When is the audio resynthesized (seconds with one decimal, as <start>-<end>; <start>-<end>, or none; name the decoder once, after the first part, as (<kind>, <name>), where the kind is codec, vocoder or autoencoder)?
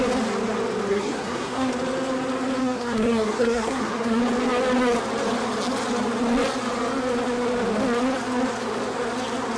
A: 0.9-1.7 (codec, SNAC); 2.6-4.2